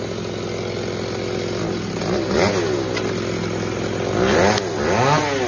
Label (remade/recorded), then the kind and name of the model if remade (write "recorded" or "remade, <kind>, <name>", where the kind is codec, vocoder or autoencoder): recorded